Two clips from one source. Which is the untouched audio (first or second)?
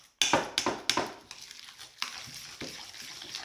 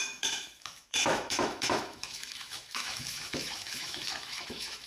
first